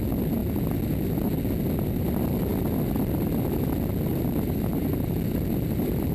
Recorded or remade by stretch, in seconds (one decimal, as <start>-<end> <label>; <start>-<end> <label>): 0.0-4.1 recorded; 4.1-4.9 remade; 4.9-6.1 recorded